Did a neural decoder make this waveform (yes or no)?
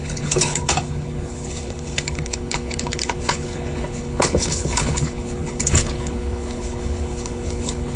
yes